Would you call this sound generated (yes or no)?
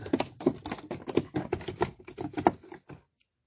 no